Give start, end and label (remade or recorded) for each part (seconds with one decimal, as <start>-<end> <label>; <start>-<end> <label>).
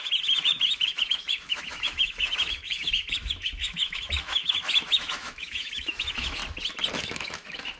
0.0-6.4 remade; 6.4-6.9 recorded; 6.9-7.8 remade